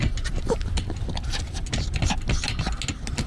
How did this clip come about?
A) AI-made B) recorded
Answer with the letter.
B